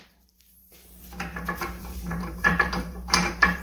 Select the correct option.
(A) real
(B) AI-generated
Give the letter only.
B